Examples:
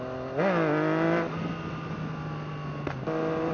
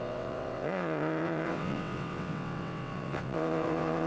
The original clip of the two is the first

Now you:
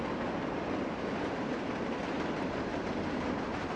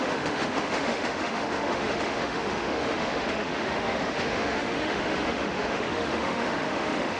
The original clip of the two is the first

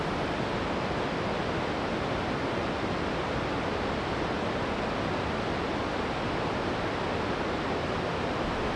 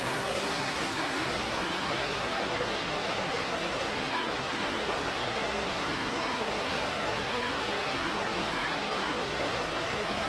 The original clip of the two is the first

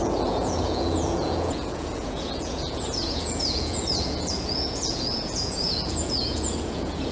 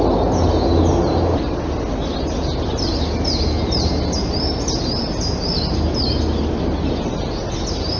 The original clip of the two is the second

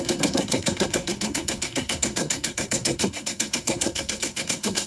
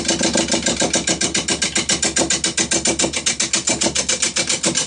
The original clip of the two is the second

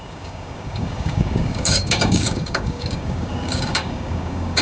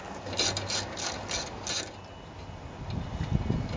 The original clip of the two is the second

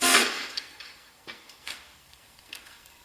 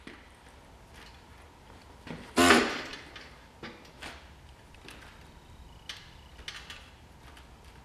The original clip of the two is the second